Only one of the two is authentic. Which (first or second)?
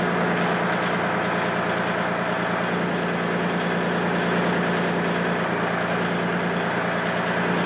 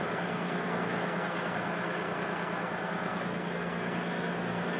first